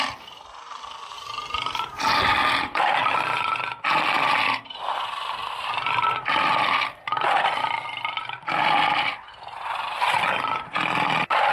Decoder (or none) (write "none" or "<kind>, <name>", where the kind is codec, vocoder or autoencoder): none